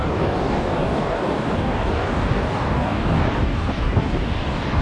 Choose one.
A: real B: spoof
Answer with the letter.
B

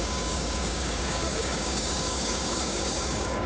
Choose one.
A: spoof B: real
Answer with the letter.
A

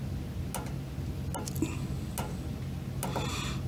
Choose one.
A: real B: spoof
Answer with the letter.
A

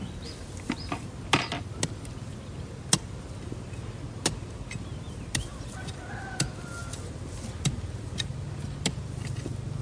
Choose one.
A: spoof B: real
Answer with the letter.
B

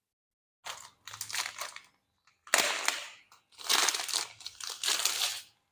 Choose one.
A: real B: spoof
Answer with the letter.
A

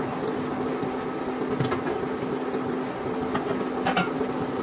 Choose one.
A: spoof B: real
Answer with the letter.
B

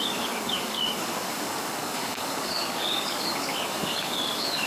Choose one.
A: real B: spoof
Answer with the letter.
B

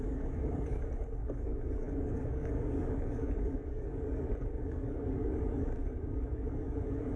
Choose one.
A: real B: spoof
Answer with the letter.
B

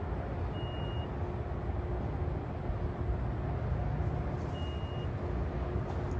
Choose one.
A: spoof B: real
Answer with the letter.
B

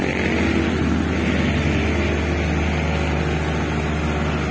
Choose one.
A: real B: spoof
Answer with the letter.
A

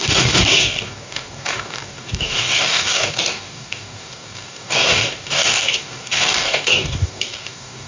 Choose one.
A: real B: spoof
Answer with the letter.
B